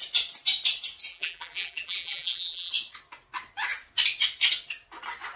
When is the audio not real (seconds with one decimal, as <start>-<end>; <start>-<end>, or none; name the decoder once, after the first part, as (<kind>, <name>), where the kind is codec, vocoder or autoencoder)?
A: 1.1-2.7 (vocoder, BigVGAN v2)